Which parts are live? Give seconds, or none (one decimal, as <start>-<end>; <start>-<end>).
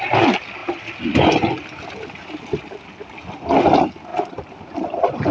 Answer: 0.0-5.3